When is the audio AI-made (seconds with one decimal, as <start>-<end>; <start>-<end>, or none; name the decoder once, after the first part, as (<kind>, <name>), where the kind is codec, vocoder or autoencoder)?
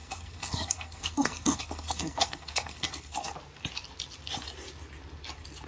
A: 0.0-3.3 (codec, SNAC)